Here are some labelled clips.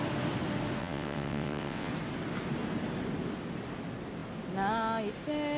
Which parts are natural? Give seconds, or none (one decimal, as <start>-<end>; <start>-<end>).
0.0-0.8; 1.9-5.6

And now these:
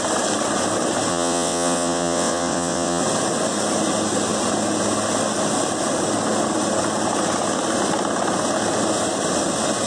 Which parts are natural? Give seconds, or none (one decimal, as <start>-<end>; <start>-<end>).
0.0-1.1; 3.0-9.9

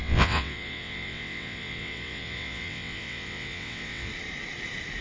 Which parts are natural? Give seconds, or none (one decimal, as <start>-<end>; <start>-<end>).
4.1-5.0